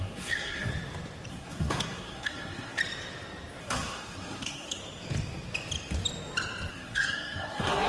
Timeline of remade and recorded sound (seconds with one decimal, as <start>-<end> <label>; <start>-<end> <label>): 0.0-0.7 remade; 0.7-1.3 recorded; 1.3-2.8 remade; 2.8-3.6 recorded; 3.6-4.8 remade; 4.8-6.7 recorded; 6.7-7.9 remade

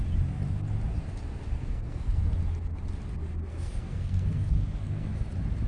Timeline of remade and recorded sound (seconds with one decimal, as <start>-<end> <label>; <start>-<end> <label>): 0.0-1.6 recorded; 1.6-2.2 remade; 2.2-3.5 recorded; 3.5-5.1 remade; 5.1-5.7 recorded

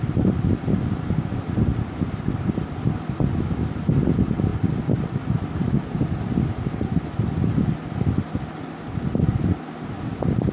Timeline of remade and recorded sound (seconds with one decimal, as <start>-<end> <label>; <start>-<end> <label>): 0.0-10.5 recorded

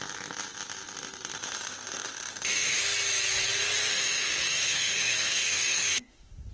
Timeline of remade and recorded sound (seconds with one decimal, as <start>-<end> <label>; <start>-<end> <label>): 0.0-1.4 recorded; 1.4-2.8 remade; 2.8-3.9 recorded; 3.9-6.5 remade